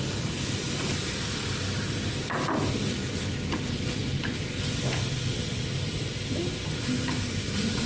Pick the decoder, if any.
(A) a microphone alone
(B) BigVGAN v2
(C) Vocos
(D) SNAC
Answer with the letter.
A